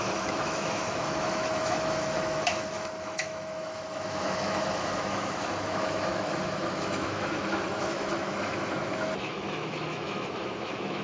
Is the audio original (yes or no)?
no